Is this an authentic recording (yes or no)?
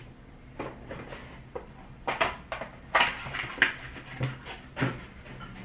yes